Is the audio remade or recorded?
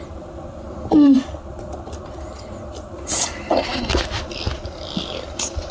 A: recorded